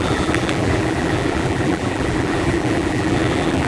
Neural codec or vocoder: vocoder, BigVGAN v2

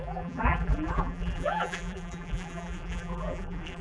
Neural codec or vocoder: vocoder, BigVGAN v2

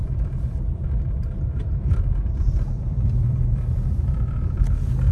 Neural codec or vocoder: vocoder, BigVGAN v2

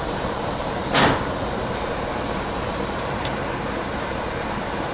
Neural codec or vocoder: vocoder, BigVGAN v2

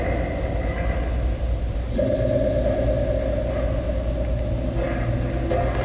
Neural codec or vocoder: none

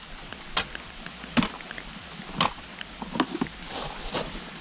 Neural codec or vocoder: none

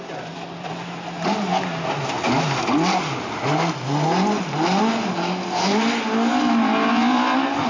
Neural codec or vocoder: none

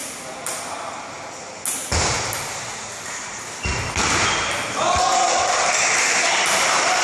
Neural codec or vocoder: none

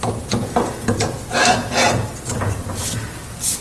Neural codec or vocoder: none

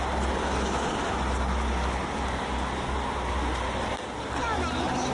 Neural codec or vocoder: none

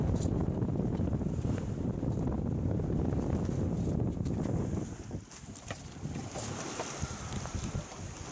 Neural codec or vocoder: none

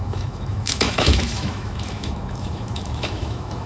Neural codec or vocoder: autoencoder, DAC-VAE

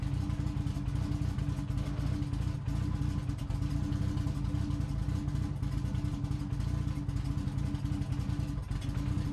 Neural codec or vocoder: none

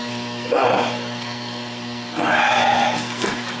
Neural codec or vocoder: codec, SNAC